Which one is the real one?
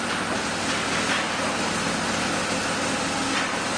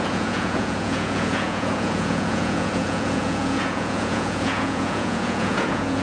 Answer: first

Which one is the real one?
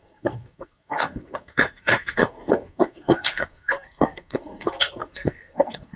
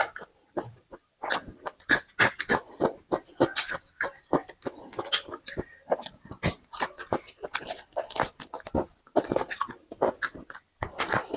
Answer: second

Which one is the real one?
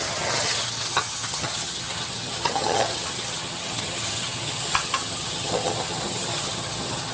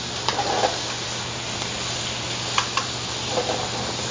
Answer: second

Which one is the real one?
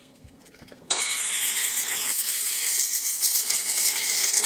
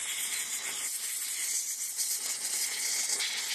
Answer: second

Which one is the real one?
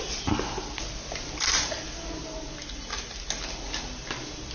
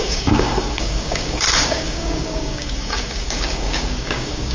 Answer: first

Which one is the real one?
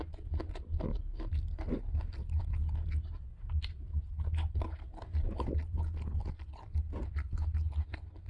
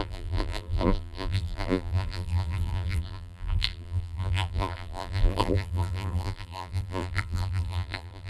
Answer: first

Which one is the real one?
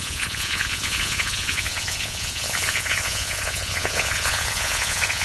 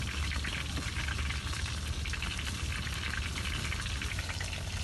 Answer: second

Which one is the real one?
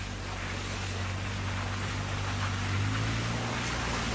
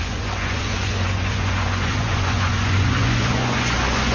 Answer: first